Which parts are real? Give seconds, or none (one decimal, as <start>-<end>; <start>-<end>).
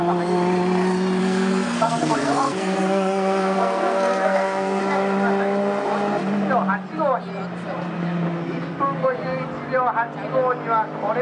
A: 0.0-1.2; 4.8-11.2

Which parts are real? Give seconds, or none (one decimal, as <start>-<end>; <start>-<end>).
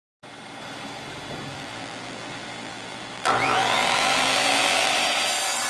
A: 0.0-1.5; 4.9-5.7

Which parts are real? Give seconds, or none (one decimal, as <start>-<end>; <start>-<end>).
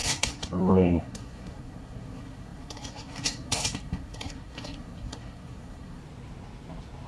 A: 6.0-7.1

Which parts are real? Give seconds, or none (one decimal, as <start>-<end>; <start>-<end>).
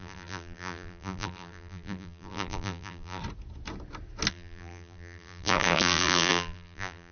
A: 3.2-4.3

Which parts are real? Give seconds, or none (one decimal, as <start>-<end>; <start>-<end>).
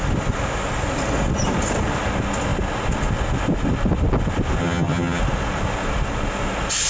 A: 0.0-4.6; 5.2-6.9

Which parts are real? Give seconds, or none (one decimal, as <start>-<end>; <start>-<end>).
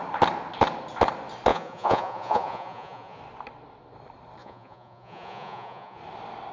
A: 0.0-1.5; 3.2-4.4; 6.0-6.5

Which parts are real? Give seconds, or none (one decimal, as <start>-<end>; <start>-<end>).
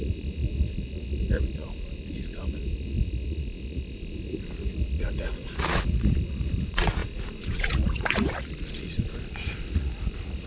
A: none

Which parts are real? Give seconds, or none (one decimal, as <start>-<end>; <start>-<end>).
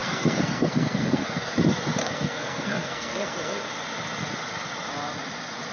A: 1.6-2.0; 3.7-5.7